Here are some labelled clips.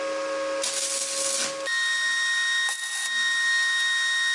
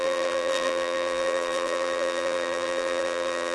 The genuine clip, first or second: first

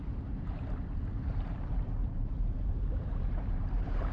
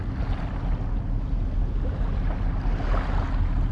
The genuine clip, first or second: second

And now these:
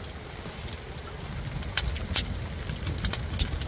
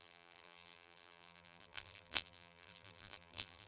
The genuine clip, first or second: first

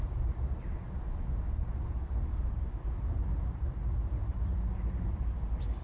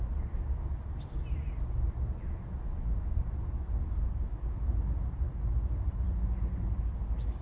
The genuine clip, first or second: second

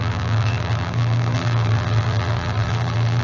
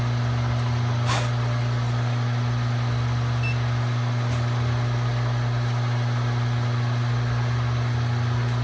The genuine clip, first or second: second